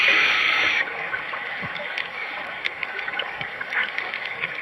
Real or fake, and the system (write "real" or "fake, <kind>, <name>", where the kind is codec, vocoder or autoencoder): fake, codec, DAC